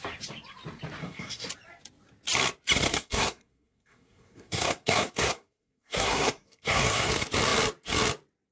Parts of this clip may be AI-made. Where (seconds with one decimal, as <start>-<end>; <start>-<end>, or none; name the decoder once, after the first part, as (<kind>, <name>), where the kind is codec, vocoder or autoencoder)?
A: 1.0-1.5 (codec, SNAC); 2.9-7.1